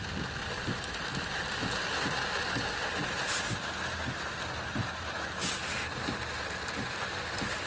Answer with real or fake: real